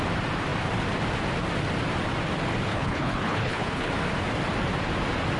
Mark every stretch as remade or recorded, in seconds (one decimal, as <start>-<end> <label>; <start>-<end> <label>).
0.0-2.7 recorded; 2.7-3.9 remade; 3.9-5.4 recorded